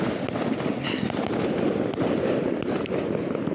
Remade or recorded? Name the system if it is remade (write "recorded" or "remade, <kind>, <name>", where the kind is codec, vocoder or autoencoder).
recorded